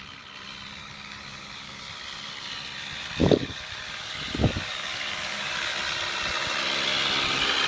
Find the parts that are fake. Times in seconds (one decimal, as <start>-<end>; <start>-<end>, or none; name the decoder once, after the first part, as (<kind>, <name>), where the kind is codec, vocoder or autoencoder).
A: 0.8-1.8 (codec, DAC); 3.2-5.7